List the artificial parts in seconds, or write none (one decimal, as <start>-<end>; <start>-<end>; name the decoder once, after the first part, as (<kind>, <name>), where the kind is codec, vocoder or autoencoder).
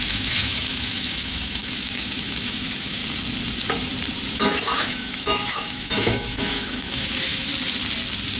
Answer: 0.0-3.0 (autoencoder, DAC-VAE); 4.3-7.5